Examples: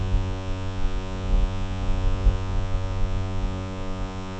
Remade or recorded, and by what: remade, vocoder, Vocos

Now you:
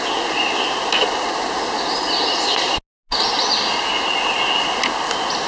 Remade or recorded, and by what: recorded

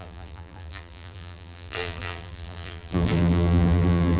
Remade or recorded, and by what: remade, vocoder, BigVGAN v2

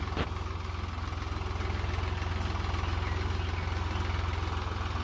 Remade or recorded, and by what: recorded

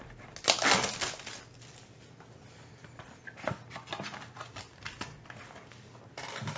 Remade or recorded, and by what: recorded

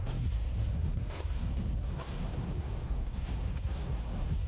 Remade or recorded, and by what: remade, codec, SNAC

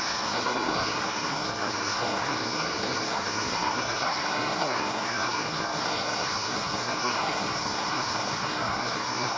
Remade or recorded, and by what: remade, codec, SNAC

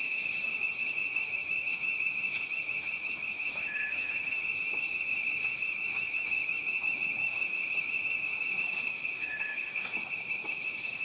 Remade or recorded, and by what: remade, autoencoder, DAC-VAE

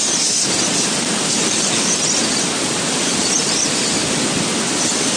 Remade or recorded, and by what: recorded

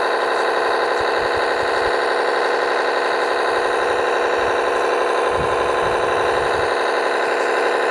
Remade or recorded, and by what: recorded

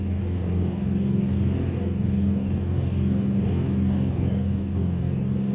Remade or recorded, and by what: remade, codec, DAC